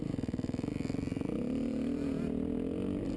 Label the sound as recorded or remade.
recorded